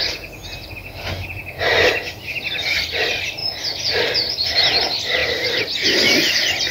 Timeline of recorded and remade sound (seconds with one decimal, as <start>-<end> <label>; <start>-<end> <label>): 0.0-5.2 recorded; 5.2-6.7 remade